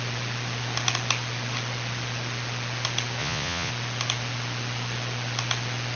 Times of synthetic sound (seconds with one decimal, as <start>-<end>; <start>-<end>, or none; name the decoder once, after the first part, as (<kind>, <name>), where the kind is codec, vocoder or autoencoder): 3.2-3.7 (vocoder, Vocos)